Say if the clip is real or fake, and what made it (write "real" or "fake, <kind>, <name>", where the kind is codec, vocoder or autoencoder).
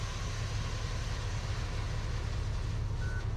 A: real